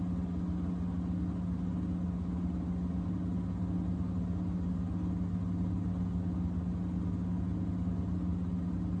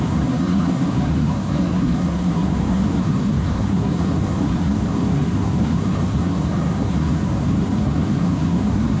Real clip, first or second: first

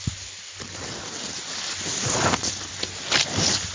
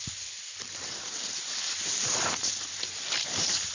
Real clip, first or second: first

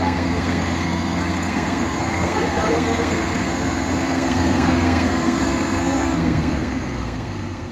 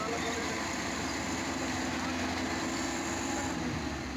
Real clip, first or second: second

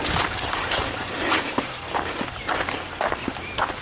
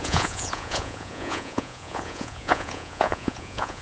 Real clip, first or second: first